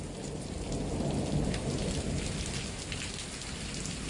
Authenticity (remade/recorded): recorded